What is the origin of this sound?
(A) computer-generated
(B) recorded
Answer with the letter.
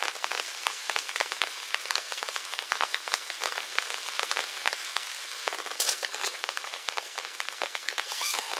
A